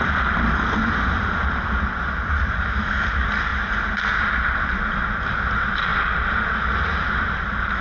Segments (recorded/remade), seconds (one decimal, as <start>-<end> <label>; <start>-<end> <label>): 0.0-3.5 remade; 3.5-4.2 recorded; 4.2-7.8 remade